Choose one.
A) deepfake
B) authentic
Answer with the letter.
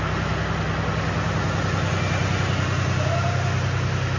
B